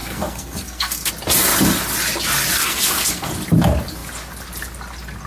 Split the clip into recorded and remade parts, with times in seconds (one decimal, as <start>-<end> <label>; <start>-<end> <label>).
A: 0.0-1.1 remade; 1.1-2.6 recorded; 2.6-3.3 remade; 3.3-5.3 recorded